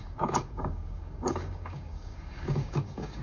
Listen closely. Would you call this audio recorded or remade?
remade